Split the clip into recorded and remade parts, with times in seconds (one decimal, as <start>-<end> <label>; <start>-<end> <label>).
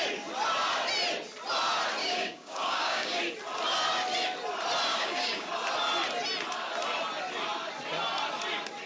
0.0-2.0 recorded; 2.0-3.2 remade; 3.2-4.9 recorded; 4.9-5.5 remade; 5.5-8.9 recorded